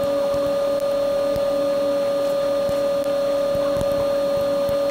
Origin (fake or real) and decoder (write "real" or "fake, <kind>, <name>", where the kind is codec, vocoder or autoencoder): real